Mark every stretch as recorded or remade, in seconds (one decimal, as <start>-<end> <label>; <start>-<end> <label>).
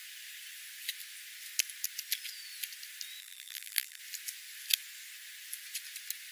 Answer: 0.0-3.2 recorded; 3.2-4.0 remade; 4.0-6.3 recorded